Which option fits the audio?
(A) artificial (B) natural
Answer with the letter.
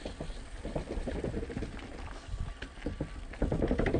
B